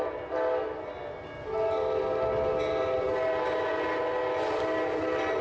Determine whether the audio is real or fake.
real